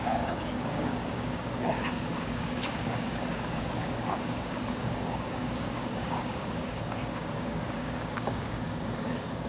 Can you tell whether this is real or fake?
fake